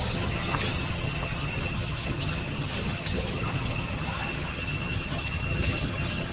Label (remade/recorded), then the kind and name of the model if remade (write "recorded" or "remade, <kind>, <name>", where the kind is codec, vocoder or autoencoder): remade, vocoder, HiFi-GAN